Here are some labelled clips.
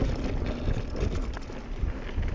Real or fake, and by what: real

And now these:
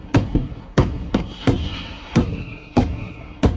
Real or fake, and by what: fake, codec, SNAC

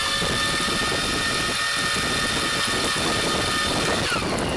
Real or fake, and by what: real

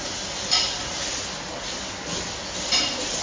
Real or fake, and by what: real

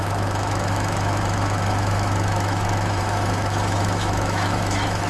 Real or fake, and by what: fake, autoencoder, DAC-VAE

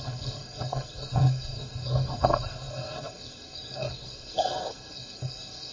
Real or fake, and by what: fake, codec, SNAC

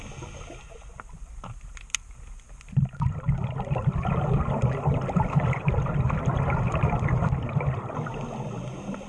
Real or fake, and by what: real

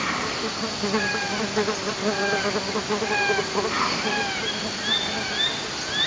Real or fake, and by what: real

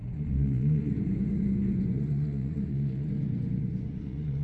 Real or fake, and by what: fake, vocoder, Vocos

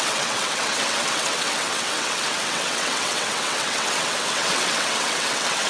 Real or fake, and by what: fake, vocoder, WaveNeXt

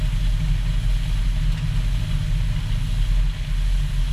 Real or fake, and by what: real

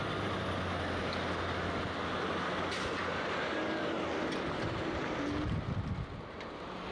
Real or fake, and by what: real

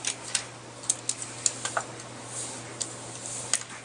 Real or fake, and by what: real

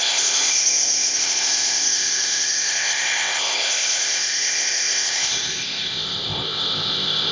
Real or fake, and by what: fake, codec, ZipCodec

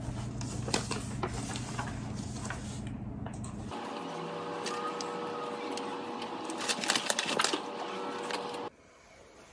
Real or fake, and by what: real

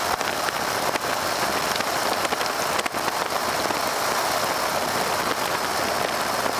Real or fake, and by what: real